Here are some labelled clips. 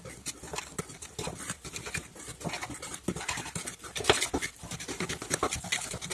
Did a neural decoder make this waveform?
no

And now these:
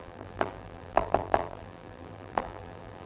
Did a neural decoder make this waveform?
yes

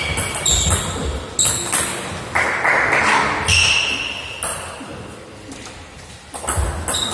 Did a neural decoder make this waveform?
no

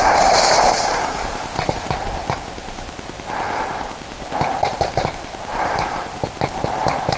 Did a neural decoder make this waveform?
yes